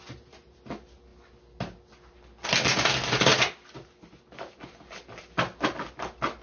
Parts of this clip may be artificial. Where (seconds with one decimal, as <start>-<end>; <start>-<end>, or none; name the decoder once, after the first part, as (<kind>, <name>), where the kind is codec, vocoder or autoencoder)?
none